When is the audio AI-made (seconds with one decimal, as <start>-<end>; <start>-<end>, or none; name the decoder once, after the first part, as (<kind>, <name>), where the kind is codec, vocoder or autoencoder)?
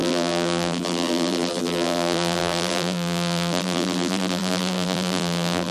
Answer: 0.0-5.7 (vocoder, BigVGAN v2)